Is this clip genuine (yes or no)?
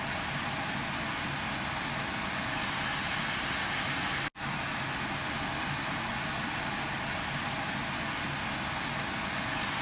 yes